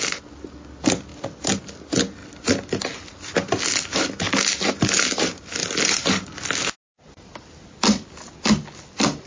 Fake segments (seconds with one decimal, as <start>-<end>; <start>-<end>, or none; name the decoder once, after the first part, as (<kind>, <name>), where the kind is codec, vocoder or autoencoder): none